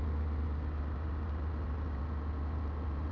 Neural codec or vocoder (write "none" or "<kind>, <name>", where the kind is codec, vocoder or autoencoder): none